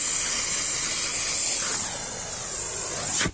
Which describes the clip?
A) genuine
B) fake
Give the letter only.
A